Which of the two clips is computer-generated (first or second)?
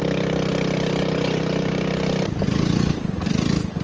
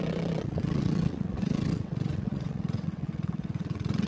second